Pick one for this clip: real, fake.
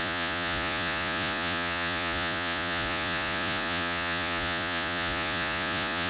fake